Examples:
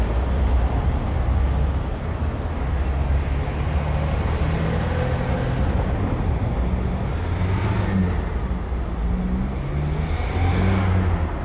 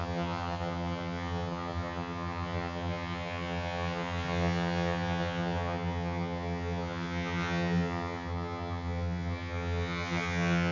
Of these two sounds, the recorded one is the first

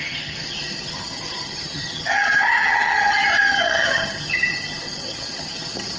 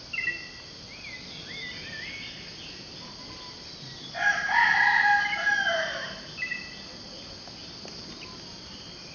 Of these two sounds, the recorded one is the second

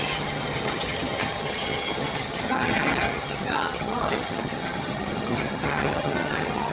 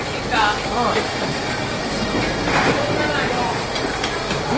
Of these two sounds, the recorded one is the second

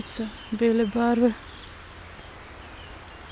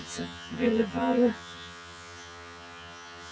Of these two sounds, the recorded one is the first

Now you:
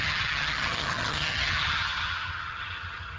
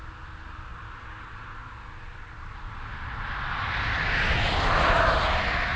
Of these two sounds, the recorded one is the second